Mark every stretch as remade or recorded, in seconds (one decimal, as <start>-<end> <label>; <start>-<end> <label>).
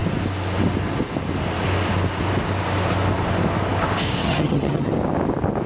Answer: 0.0-4.2 recorded; 4.2-4.9 remade; 4.9-5.7 recorded